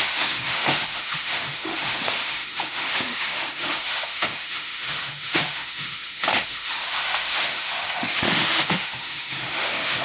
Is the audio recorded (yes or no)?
no